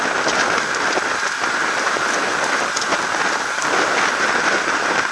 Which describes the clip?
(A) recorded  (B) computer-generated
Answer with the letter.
A